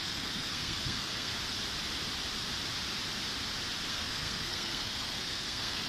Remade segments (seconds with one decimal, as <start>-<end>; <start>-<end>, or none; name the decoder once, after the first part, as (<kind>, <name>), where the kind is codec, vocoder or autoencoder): 0.0-1.3 (codec, SNAC); 3.9-5.9